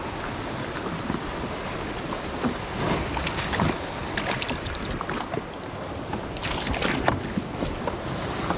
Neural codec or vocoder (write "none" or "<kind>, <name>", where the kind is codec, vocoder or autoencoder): none